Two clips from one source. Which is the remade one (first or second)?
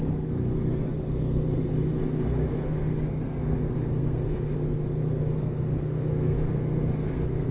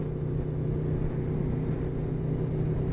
first